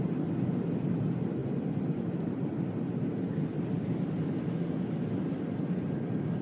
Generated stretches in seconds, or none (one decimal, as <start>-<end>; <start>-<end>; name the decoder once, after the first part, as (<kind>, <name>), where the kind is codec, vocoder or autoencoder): none